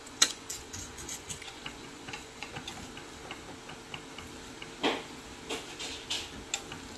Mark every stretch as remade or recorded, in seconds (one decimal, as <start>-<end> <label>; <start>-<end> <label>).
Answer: 0.0-2.7 remade; 2.7-7.0 recorded